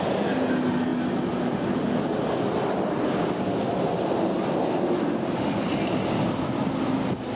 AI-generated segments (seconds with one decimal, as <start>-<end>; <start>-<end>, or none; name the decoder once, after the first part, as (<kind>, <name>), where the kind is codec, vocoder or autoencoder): none